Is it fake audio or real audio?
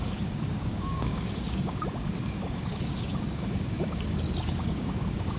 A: fake